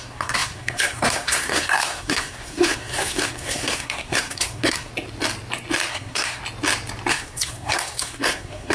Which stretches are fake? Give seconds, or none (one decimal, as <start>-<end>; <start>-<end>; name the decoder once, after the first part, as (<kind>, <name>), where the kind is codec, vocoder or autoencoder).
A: 0.0-4.9 (codec, SNAC); 5.9-6.4; 7.1-8.7